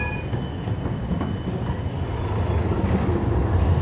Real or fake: real